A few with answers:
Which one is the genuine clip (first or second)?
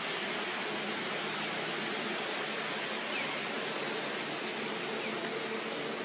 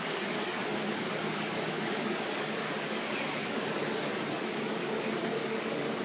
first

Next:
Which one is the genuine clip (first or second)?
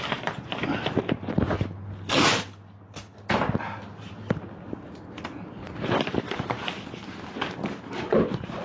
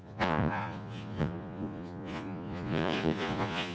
first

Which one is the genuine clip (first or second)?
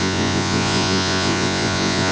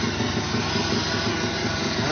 second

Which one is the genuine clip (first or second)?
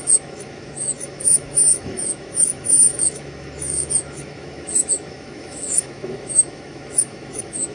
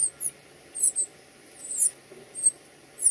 second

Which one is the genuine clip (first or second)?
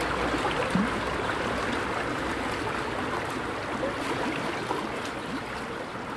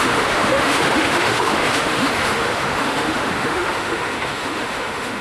first